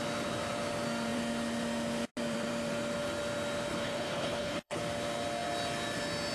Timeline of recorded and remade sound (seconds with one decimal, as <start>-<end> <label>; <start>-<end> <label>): 0.0-3.7 recorded; 3.7-4.8 remade; 4.8-6.3 recorded